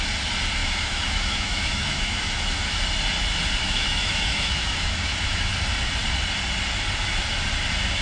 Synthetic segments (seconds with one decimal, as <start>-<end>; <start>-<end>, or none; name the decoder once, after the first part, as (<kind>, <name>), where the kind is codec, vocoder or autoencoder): 0.6-2.7 (autoencoder, DAC-VAE); 3.6-5.5